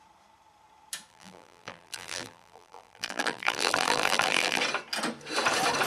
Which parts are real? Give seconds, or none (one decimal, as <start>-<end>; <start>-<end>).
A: 0.0-1.1; 4.6-5.9